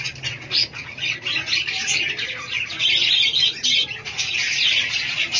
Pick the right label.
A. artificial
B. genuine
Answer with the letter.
B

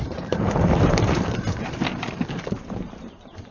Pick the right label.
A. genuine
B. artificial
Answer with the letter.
B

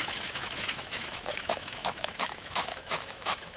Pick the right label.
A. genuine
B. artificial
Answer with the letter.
B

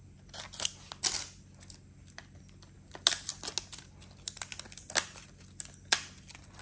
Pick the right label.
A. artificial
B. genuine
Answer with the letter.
B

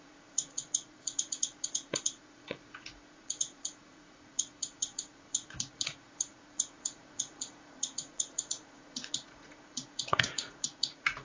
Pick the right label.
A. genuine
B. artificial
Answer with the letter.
B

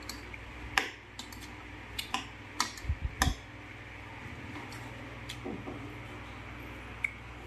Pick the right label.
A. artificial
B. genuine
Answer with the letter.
B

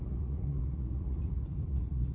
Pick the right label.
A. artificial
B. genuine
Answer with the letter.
A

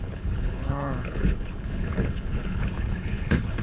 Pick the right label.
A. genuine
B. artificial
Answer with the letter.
B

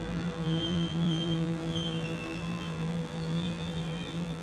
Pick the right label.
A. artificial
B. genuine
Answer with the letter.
A